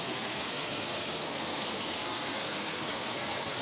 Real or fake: fake